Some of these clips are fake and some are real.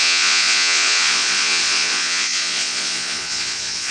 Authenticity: fake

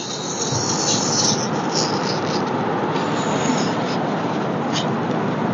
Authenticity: real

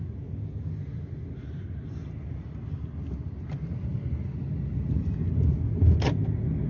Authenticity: real